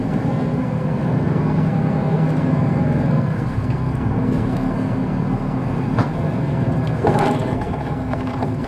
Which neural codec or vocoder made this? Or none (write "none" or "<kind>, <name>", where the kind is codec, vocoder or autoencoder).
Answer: codec, SNAC